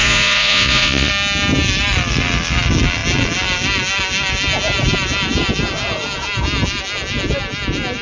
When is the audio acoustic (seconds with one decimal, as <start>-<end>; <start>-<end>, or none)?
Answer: 1.1-8.0